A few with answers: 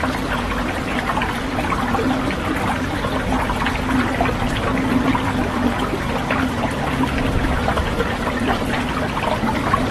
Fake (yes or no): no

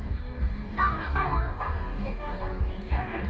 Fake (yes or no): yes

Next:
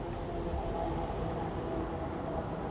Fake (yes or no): no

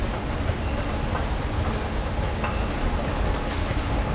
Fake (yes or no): no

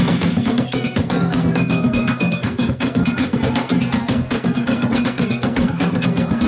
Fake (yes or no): yes